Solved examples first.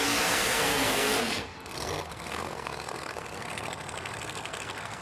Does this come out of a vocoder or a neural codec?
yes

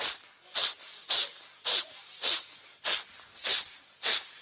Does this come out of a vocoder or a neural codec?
no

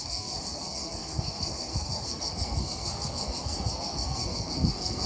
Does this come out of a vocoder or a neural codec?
yes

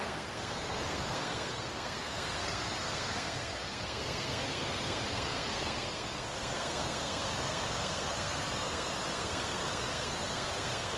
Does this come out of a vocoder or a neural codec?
yes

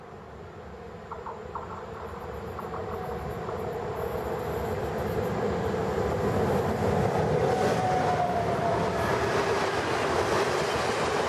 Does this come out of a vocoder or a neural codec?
no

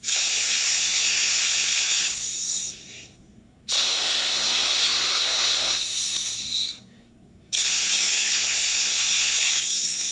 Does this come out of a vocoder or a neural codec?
yes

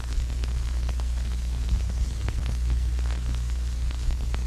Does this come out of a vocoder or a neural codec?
yes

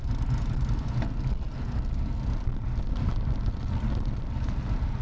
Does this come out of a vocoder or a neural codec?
no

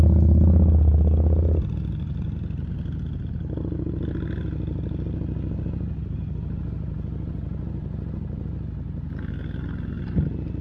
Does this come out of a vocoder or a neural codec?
no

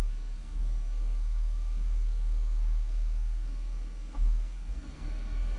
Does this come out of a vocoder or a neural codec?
yes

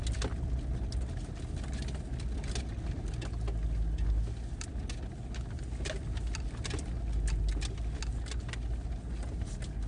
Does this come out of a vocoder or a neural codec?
no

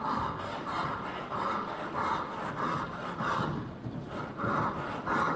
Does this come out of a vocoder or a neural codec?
no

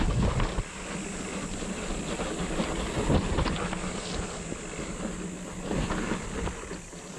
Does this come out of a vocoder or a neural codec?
no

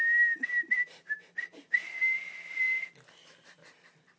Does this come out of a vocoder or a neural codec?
no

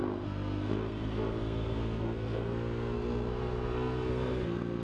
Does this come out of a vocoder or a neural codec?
yes